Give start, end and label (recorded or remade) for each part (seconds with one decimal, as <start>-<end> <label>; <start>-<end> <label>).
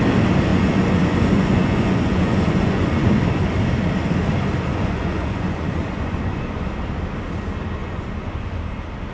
0.0-0.5 recorded; 0.5-3.1 remade; 3.1-4.7 recorded; 4.7-6.7 remade; 6.7-7.8 recorded; 7.8-8.6 remade; 8.6-9.1 recorded